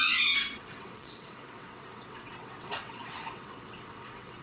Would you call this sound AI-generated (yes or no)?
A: yes